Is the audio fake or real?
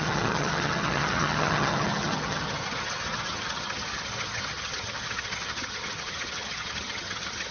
fake